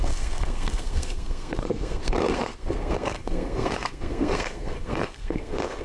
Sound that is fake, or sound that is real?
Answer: fake